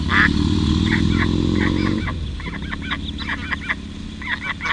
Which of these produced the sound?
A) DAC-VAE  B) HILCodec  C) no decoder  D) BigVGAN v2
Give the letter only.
C